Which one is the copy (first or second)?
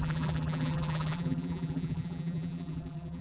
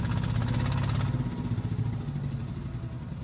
first